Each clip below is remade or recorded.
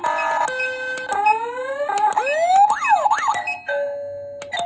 recorded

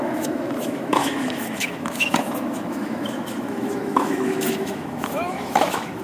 remade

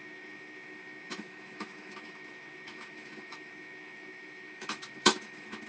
remade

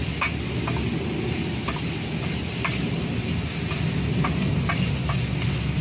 recorded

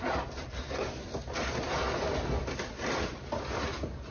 recorded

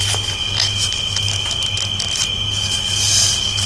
recorded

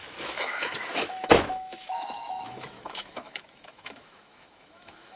remade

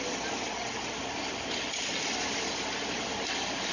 recorded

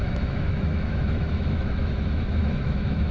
remade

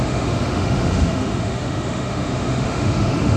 remade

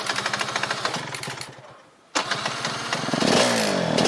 recorded